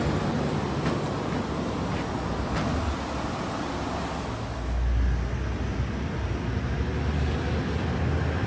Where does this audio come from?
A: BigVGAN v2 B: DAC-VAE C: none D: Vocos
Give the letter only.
C